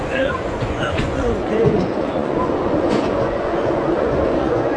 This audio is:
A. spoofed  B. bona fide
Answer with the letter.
A